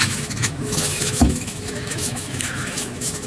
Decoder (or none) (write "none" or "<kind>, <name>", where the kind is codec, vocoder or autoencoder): autoencoder, DAC-VAE